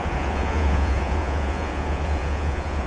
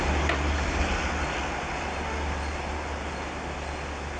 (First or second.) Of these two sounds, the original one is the second